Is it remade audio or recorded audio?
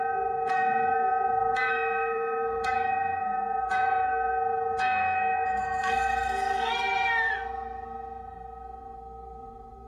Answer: remade